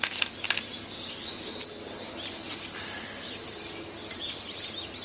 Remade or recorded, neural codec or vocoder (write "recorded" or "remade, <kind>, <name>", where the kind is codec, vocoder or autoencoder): recorded